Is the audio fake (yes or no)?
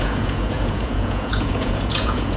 yes